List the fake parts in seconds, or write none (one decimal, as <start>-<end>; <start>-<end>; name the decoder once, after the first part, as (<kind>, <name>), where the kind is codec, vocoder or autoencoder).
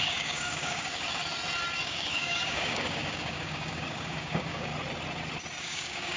0.0-1.2 (codec, DAC); 1.8-4.7; 5.6-6.2